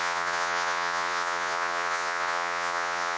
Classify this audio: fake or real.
fake